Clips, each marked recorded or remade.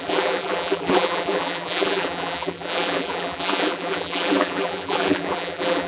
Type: remade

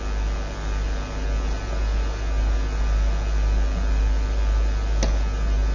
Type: recorded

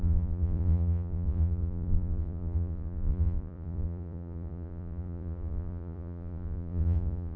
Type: remade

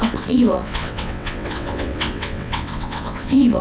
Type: remade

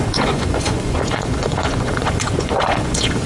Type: remade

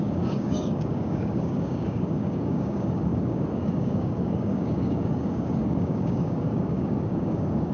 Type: remade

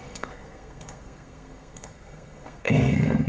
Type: remade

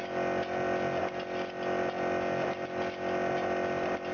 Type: recorded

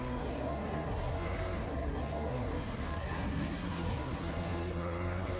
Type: remade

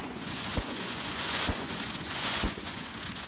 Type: remade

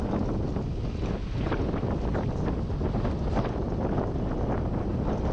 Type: recorded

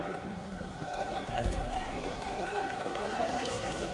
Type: remade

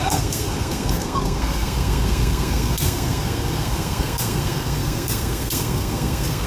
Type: remade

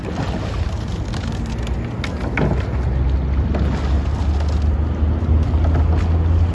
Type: recorded